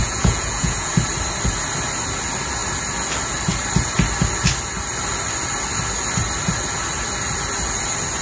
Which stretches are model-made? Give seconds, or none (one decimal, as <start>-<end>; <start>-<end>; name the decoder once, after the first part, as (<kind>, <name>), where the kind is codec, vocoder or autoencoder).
0.0-0.9 (vocoder, Vocos)